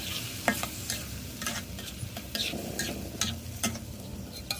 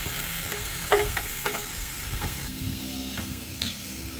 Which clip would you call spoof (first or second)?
second